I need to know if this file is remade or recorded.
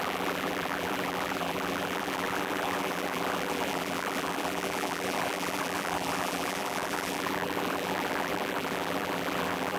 remade